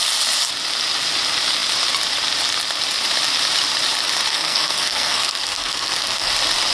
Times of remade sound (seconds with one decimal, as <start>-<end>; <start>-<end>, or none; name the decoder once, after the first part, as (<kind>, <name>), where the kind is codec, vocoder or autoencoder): 4.3-6.3 (codec, SNAC)